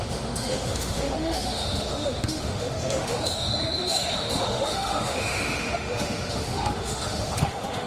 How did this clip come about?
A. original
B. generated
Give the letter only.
B